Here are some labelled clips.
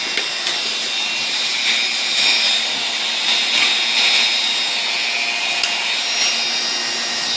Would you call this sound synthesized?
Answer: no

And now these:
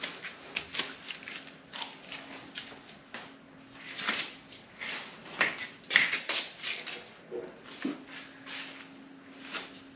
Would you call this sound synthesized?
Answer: no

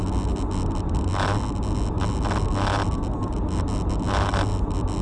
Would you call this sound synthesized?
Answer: no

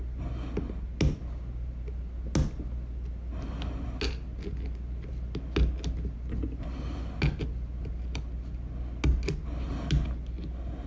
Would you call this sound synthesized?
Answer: no